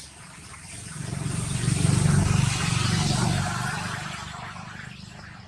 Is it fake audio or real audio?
real